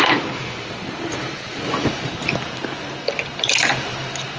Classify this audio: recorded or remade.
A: remade